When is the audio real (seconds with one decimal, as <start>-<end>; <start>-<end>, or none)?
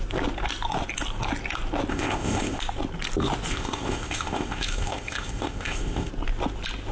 0.0-1.9; 2.6-3.5; 6.1-6.9